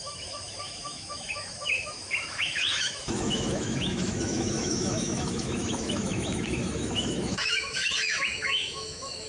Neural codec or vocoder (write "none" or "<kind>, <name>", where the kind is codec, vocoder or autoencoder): autoencoder, DAC-VAE